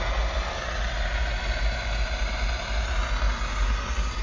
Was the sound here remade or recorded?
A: recorded